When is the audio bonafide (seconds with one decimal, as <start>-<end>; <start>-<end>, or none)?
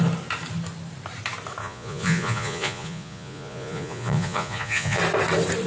0.0-1.6; 5.0-5.7